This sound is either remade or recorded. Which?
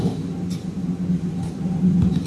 recorded